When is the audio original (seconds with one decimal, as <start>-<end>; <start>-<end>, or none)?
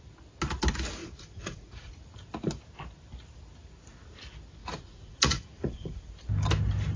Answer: 0.0-1.0; 2.0-4.6; 6.0-7.0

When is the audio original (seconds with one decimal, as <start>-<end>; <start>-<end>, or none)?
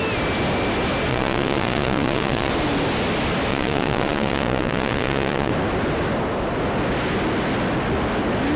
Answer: 0.0-1.1; 2.5-3.5; 5.5-8.6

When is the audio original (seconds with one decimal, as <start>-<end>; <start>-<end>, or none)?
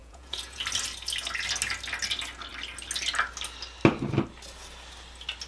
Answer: 0.6-5.5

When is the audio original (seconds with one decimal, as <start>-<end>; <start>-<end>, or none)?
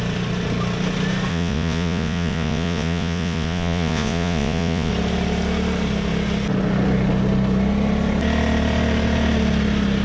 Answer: 0.0-1.3; 4.9-10.0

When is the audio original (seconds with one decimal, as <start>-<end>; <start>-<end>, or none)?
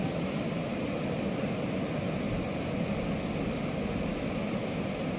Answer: 0.0-5.2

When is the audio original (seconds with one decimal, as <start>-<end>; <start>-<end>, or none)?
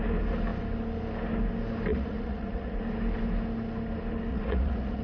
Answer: 0.0-1.9; 2.8-4.3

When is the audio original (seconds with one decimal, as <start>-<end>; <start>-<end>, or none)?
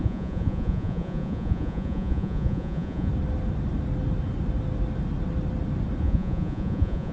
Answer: 3.1-6.0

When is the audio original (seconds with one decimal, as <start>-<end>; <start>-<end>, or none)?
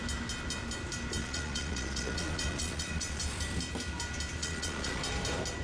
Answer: 0.0-1.2; 3.2-4.4; 5.0-5.6